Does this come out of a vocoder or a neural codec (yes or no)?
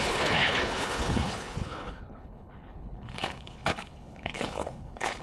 yes